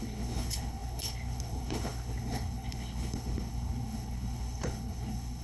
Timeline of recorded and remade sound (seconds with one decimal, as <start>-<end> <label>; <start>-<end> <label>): 0.0-5.4 remade